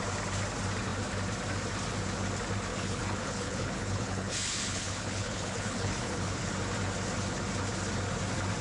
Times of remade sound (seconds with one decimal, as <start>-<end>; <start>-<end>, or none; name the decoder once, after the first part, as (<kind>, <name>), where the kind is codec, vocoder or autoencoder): 2.7-6.5 (codec, HILCodec)